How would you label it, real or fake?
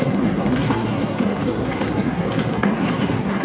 fake